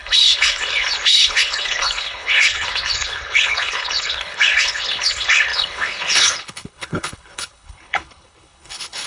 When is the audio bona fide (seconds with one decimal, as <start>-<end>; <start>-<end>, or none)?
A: none